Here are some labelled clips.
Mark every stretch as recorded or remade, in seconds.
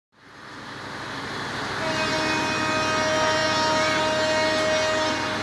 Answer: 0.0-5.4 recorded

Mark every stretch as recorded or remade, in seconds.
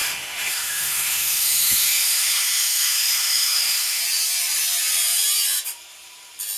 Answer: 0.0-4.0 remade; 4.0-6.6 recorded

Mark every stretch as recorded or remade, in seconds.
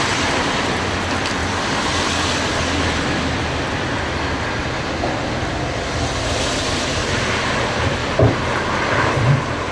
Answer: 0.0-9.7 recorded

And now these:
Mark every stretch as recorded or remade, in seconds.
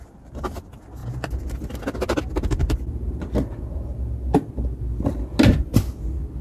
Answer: 0.0-6.4 recorded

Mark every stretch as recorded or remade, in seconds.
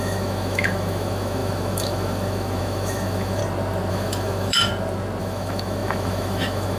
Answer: 0.0-3.4 remade; 3.4-3.9 recorded; 3.9-4.7 remade; 4.7-5.2 recorded; 5.2-6.8 remade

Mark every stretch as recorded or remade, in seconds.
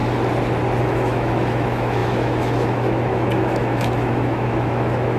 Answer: 0.0-0.8 recorded; 0.8-5.2 remade